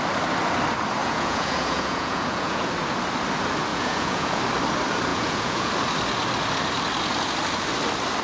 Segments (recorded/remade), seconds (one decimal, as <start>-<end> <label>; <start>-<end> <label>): 0.0-1.0 recorded; 1.0-2.7 remade; 2.7-3.7 recorded; 3.7-4.4 remade; 4.4-5.1 recorded; 5.1-5.7 remade; 5.7-8.2 recorded